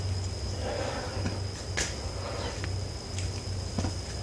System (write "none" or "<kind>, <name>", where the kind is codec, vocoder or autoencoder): none